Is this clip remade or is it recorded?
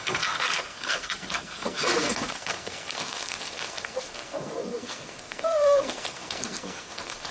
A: remade